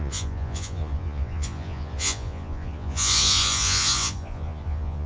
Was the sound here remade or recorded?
remade